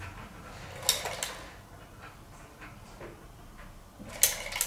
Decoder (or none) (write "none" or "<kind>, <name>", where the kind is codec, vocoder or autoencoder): none